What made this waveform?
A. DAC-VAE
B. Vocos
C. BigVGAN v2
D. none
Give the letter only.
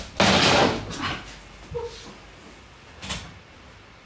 D